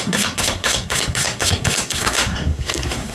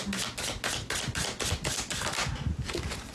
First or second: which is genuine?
second